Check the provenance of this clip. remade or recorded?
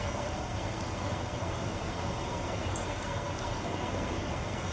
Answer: remade